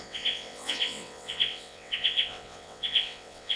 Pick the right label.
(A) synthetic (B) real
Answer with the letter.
A